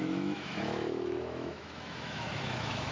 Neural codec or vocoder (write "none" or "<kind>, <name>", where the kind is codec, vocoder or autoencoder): autoencoder, DAC-VAE